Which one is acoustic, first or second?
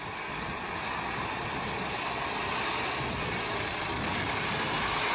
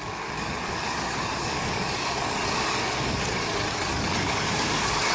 first